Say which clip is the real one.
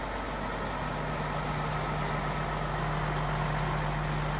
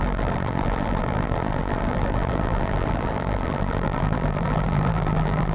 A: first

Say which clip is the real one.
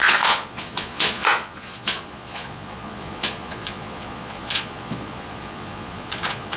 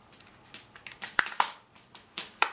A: second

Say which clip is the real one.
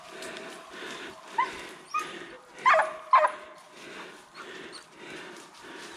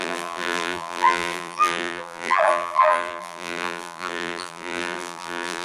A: first